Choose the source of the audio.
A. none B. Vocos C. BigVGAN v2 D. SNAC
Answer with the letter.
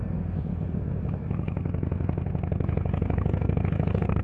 D